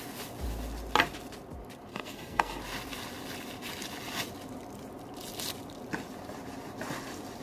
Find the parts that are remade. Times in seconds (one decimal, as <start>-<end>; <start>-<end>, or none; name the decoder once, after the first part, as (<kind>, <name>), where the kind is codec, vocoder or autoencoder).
1.9-2.6 (codec, SNAC)

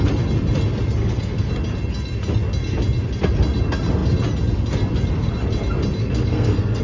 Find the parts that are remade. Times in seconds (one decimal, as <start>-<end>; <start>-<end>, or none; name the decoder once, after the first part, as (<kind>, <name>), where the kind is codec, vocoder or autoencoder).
1.0-1.5 (codec, SNAC); 6.0-6.8

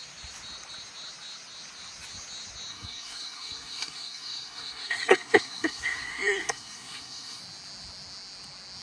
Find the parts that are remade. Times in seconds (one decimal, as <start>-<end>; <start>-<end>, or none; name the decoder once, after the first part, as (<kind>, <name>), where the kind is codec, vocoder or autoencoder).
2.7-7.4 (codec, SNAC)

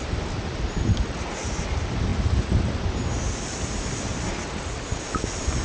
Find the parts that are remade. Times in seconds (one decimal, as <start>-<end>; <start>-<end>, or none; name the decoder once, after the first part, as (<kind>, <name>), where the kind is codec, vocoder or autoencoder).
none

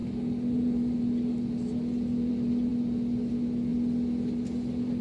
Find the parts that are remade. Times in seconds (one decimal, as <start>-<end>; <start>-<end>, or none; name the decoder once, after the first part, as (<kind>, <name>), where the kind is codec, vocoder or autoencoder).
none

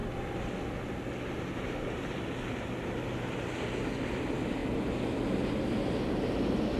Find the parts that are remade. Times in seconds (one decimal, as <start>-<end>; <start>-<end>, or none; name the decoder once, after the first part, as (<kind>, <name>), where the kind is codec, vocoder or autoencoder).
none